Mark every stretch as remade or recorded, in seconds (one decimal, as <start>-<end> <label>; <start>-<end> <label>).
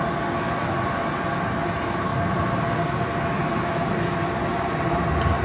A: 0.0-5.4 recorded